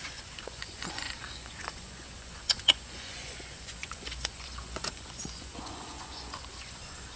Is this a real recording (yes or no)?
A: no